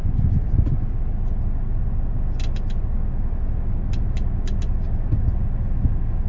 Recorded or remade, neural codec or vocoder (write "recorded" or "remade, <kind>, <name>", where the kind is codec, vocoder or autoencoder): recorded